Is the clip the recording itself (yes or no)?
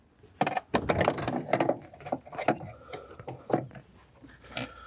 yes